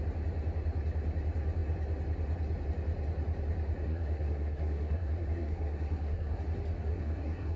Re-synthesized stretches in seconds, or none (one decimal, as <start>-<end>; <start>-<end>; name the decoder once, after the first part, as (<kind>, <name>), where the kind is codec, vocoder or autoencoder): 3.8-6.4 (codec, SNAC); 6.9-7.6